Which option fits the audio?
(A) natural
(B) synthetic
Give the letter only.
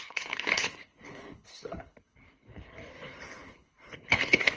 B